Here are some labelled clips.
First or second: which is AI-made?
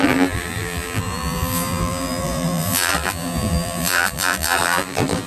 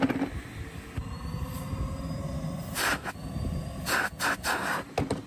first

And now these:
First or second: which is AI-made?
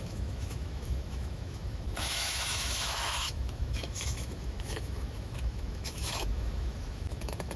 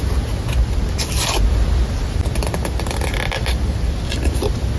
first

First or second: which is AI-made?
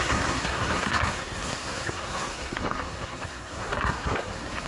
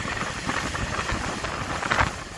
first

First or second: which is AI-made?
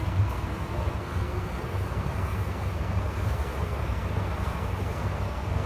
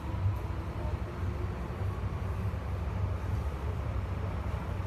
first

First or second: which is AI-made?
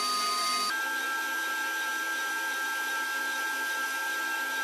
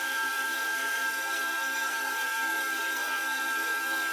second